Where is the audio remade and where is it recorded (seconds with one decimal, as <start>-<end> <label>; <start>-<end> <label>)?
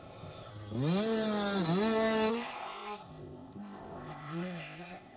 0.0-0.5 remade; 0.5-2.3 recorded; 2.3-5.2 remade